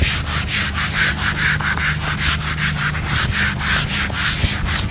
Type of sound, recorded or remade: recorded